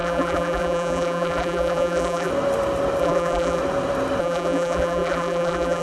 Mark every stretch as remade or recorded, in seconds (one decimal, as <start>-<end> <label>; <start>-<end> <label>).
0.0-2.3 remade; 2.3-3.0 recorded; 3.0-3.6 remade; 3.6-4.2 recorded; 4.2-5.8 remade